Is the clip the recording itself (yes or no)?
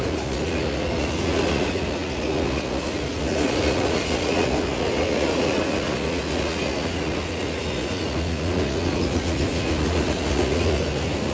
no